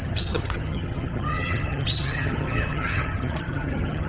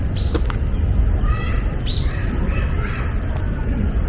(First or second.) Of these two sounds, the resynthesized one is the first